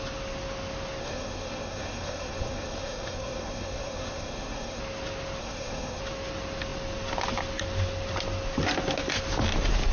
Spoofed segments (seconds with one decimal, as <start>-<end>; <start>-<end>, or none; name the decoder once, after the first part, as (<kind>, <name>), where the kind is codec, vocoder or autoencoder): 1.0-4.8 (codec, SNAC); 5.4-6.0